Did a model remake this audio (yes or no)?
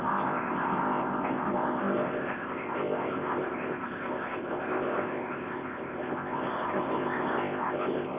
yes